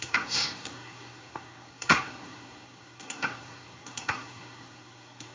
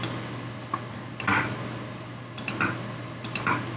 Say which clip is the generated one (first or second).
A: first